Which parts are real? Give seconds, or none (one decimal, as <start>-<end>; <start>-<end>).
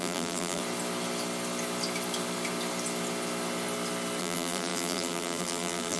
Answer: 0.6-4.2